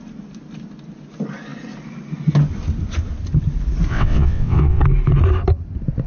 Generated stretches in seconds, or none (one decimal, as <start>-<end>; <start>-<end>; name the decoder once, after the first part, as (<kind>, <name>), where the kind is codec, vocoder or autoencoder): 3.9-4.8 (vocoder, WaveNeXt)